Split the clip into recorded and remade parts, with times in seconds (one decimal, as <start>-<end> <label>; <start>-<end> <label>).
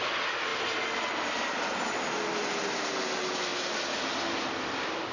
0.0-5.1 recorded